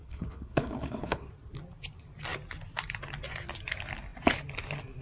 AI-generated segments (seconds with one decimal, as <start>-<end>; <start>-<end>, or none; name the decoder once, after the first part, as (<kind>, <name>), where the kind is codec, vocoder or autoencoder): 0.0-1.3 (codec, HILCodec)